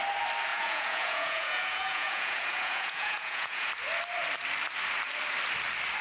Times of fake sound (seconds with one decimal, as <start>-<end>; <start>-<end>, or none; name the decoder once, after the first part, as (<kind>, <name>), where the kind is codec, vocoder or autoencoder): 0.5-3.7 (vocoder, Vocos)